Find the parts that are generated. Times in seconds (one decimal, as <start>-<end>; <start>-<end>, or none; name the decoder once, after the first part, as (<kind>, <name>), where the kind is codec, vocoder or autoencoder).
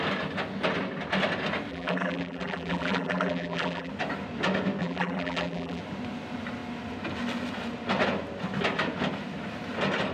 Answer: 1.7-3.9 (vocoder, BigVGAN v2); 4.8-5.8